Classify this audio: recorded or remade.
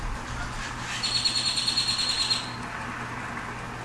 recorded